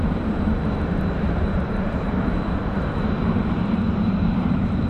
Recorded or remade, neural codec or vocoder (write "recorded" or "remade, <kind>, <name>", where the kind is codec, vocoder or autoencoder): remade, vocoder, BigVGAN v2